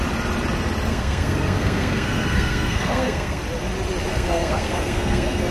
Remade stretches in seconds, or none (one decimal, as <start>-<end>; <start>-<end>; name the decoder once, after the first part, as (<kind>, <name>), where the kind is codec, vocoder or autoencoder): 0.9-3.4 (codec, SNAC); 4.1-5.5